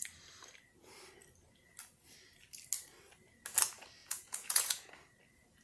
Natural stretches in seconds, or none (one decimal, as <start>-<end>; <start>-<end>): 0.0-4.0; 4.9-5.6